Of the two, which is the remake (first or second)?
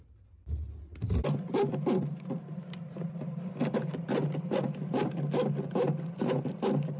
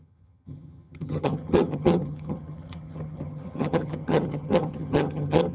second